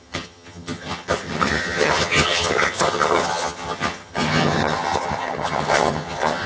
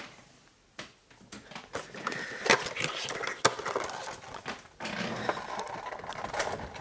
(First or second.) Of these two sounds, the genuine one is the second